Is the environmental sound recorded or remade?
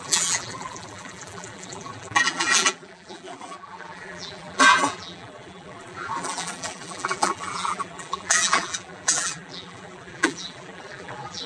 remade